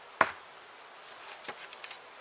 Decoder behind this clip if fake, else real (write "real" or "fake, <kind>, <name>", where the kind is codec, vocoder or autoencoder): real